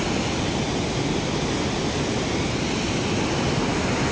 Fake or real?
real